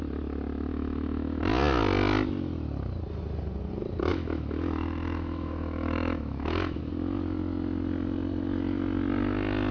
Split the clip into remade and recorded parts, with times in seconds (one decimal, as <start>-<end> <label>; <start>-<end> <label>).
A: 0.0-0.7 recorded; 0.7-1.4 remade; 1.4-4.1 recorded; 4.1-6.8 remade; 6.8-9.7 recorded